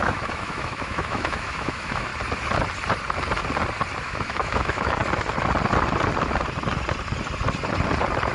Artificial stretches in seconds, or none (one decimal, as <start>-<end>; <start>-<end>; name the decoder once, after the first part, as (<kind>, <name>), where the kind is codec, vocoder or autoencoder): 0.0-2.1 (autoencoder, DAC-VAE); 4.0-5.0